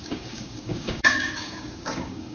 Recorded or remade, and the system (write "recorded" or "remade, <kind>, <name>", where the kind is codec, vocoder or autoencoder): remade, codec, DAC